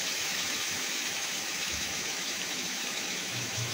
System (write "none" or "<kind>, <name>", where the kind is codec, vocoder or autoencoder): autoencoder, DAC-VAE